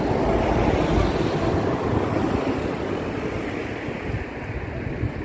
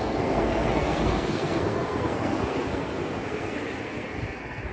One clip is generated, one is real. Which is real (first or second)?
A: first